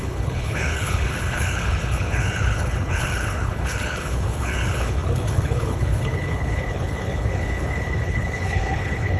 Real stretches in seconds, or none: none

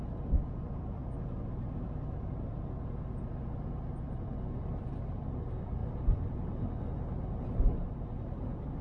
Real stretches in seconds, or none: 1.0-3.9; 5.8-7.6